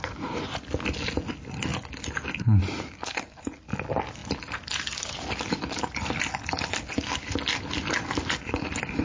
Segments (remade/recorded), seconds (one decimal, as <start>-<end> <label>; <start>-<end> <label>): 0.0-9.0 recorded